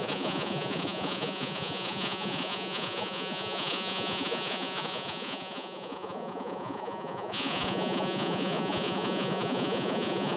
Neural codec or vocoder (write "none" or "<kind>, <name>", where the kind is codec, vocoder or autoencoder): vocoder, Vocos